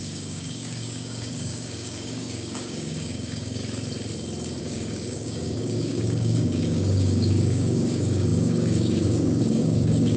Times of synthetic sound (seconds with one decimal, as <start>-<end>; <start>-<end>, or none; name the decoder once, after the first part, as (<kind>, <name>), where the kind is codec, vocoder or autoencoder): 0.0-3.6 (codec, DAC); 4.6-10.2